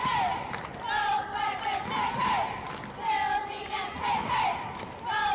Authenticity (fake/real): real